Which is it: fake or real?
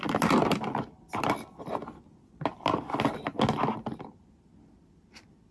real